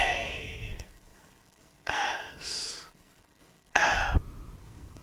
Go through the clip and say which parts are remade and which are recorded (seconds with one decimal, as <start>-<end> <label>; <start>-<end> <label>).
0.0-4.0 remade; 4.0-4.6 recorded; 4.6-5.0 remade